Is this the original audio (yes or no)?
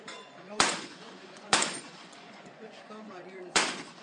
no